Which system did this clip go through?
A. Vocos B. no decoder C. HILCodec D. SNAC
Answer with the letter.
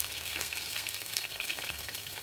D